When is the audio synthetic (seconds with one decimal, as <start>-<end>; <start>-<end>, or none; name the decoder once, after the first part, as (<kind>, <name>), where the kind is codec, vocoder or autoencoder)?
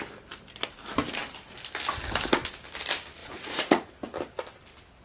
3.2-3.9 (vocoder, Vocos)